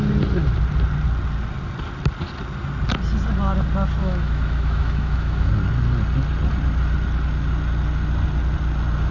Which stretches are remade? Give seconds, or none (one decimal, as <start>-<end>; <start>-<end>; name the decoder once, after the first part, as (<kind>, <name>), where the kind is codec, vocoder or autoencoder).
4.0-5.5 (autoencoder, DAC-VAE)